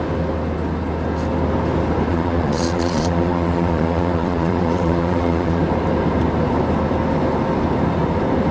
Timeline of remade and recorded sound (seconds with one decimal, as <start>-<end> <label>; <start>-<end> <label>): 0.0-2.1 recorded; 2.1-5.6 remade; 5.6-8.5 recorded